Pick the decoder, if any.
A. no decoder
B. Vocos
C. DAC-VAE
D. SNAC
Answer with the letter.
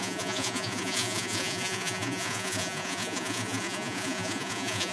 B